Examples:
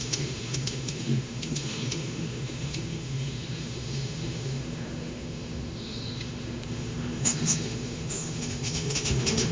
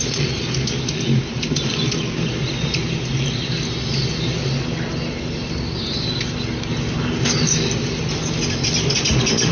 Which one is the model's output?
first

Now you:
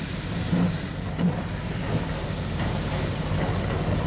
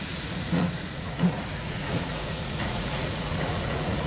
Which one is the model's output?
second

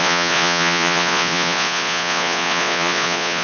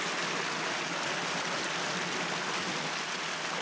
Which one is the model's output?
first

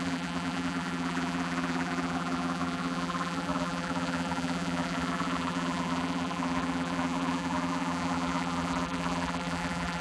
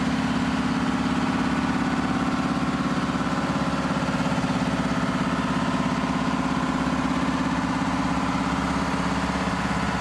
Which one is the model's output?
first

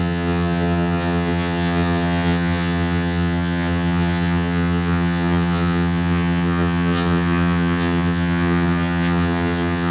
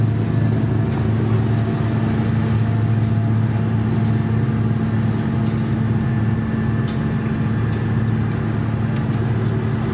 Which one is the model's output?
first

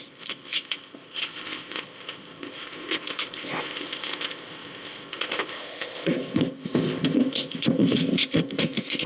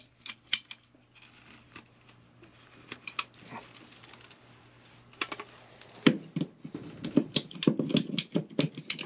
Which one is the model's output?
first